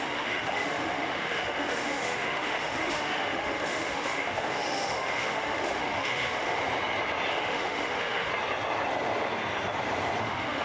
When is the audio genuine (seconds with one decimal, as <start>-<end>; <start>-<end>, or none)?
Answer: 6.6-7.3; 8.3-10.2